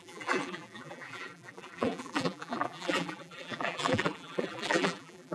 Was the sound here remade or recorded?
remade